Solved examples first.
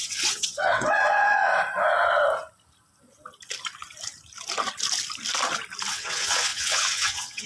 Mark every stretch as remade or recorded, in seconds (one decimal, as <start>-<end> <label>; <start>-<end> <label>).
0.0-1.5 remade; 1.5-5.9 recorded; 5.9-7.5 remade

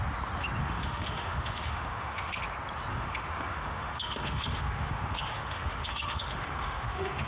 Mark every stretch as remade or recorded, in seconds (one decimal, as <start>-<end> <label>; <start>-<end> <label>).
0.0-0.6 recorded; 0.6-2.4 remade; 2.4-2.9 recorded; 2.9-7.3 remade

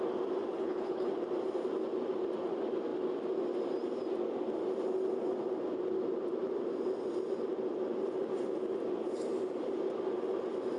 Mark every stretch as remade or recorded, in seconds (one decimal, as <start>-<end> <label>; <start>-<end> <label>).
0.0-0.5 recorded; 0.5-1.1 remade; 1.1-10.8 recorded

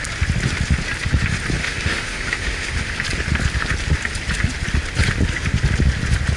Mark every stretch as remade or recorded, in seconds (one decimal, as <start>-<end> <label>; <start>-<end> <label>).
0.0-1.6 recorded; 1.6-2.9 remade; 2.9-6.4 recorded

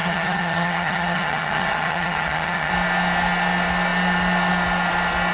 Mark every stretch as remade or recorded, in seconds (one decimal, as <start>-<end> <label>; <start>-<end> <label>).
0.0-2.7 remade; 2.7-5.3 recorded

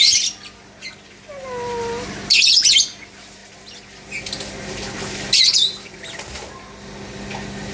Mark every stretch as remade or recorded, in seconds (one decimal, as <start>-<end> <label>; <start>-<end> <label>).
0.0-7.7 recorded